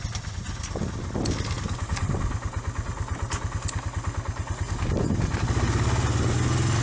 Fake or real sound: real